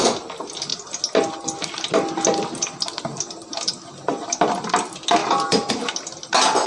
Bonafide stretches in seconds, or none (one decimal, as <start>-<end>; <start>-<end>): 0.0-5.2; 5.7-6.7